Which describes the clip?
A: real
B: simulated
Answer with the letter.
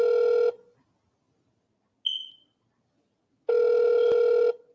A